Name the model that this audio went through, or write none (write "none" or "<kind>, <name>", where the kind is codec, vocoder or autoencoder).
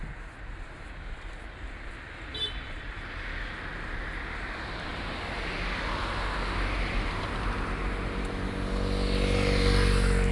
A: none